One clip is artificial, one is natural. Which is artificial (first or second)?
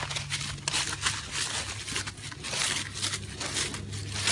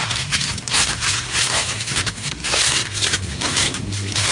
second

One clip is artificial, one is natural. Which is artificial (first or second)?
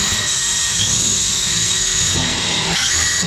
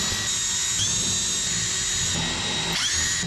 first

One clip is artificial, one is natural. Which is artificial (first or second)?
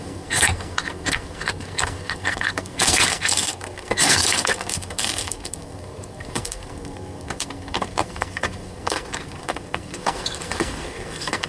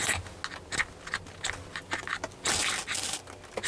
first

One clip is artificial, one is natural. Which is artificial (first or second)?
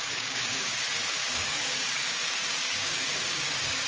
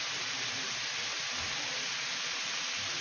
first